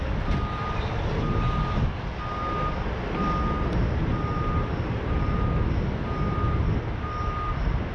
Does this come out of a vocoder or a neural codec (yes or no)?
no